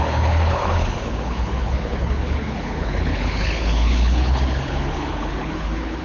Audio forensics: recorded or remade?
remade